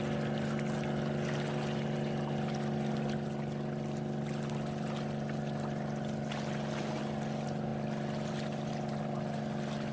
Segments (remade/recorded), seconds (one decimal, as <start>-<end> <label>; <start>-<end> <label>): 0.0-9.9 recorded

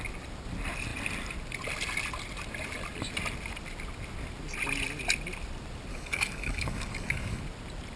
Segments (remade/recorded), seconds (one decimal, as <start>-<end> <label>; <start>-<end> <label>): 0.0-5.9 recorded; 5.9-7.4 remade; 7.4-8.0 recorded